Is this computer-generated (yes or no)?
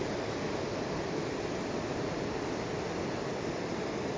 no